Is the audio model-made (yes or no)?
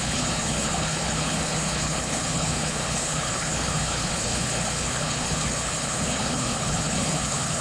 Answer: yes